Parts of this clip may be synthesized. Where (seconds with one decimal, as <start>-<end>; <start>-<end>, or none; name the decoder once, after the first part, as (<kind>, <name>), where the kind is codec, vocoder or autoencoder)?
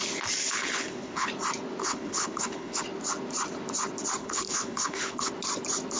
0.5-1.3 (codec, HILCodec); 1.8-2.8; 4.2-5.3